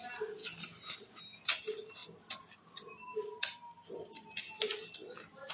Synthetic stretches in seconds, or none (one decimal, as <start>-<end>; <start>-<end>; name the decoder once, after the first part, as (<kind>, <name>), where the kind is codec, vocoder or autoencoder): none